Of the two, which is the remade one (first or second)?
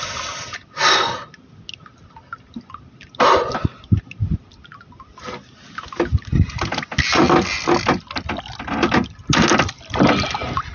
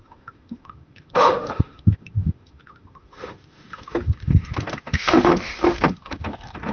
second